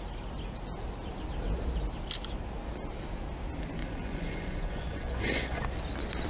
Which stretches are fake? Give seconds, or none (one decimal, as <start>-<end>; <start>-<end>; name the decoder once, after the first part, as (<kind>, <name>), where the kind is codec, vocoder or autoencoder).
3.8-5.6 (vocoder, Vocos)